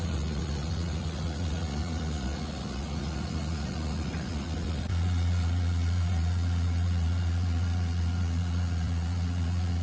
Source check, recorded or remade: remade